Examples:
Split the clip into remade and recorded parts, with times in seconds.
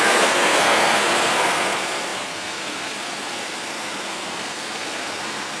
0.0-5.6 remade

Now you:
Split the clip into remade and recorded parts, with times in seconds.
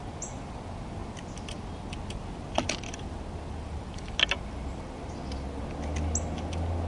0.0-6.9 recorded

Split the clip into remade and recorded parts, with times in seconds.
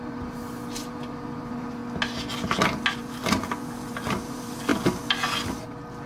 0.0-1.8 remade; 1.8-3.0 recorded; 3.0-4.7 remade; 4.7-6.1 recorded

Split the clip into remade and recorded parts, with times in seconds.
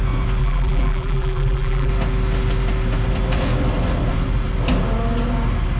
0.0-0.4 recorded; 0.4-1.9 remade; 1.9-5.8 recorded